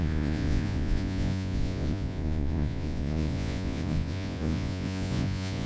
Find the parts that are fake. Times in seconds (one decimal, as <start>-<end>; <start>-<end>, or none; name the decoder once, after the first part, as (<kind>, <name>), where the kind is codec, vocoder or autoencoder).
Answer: 0.0-5.7 (vocoder, Vocos)